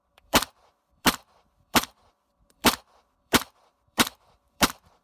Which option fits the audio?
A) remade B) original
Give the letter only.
A